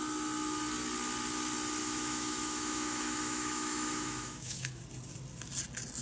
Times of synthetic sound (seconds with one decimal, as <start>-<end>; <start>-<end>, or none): 1.8-4.8